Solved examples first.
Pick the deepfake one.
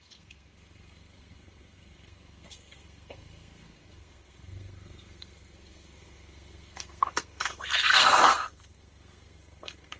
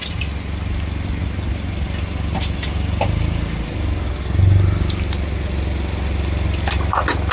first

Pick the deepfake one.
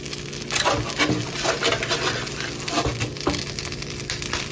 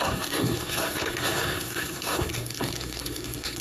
second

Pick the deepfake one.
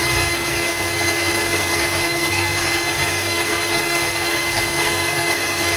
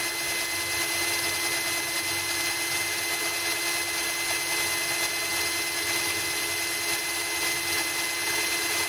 first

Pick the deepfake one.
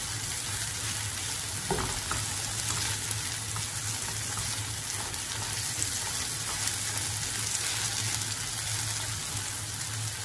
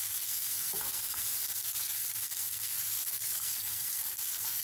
second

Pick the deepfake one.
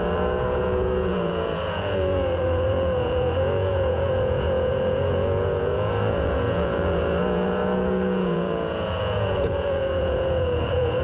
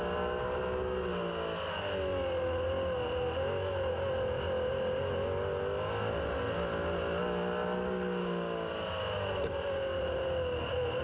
first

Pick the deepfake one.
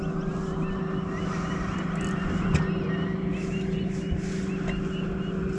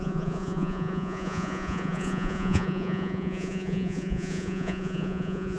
second